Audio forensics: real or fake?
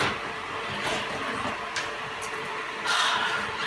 real